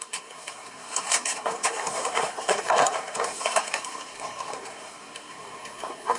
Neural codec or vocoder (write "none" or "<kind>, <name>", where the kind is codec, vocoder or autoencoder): codec, SNAC